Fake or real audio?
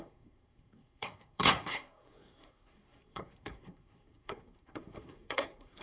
fake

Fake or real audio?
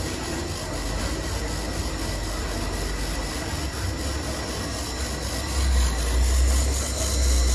real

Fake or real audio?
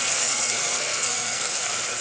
fake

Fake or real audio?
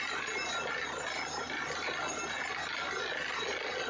real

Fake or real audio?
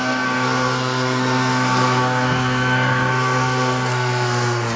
fake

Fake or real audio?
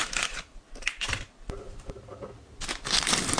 real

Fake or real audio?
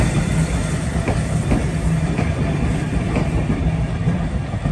real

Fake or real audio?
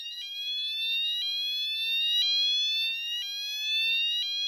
real